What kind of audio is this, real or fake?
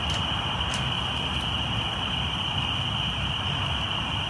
real